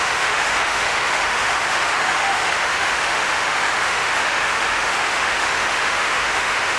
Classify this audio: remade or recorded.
remade